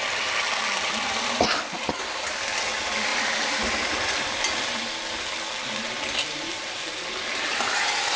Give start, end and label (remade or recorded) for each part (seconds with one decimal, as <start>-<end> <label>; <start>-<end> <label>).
0.0-3.1 recorded; 3.1-3.9 remade; 3.9-8.2 recorded

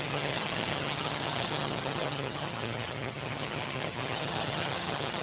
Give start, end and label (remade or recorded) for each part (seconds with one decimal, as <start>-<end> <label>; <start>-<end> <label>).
0.0-5.2 remade